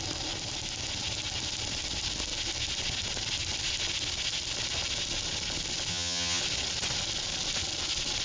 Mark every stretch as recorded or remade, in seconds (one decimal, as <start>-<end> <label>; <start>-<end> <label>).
0.0-5.9 recorded; 5.9-6.4 remade; 6.4-8.2 recorded